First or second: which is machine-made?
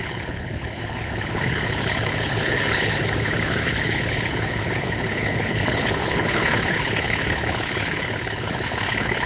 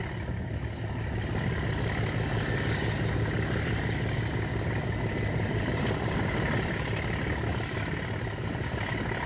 first